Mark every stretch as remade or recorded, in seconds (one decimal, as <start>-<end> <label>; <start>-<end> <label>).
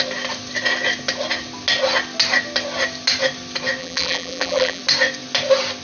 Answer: 0.0-3.8 recorded; 3.8-4.8 remade; 4.8-5.8 recorded